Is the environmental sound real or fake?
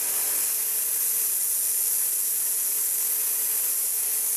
real